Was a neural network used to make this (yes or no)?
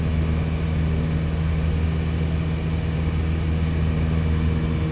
no